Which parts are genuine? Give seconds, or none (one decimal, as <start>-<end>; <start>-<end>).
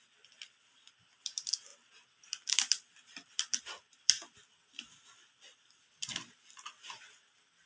none